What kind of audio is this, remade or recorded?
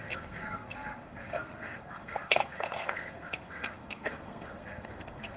remade